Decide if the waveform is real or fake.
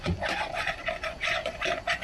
fake